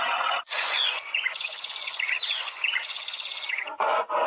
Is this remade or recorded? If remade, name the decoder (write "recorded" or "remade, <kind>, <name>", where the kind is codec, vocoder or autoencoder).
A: remade, vocoder, Vocos